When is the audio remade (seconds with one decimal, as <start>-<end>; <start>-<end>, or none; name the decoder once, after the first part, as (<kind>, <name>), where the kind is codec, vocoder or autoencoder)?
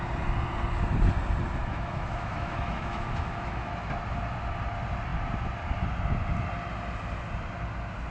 1.6-3.7 (autoencoder, DAC-VAE)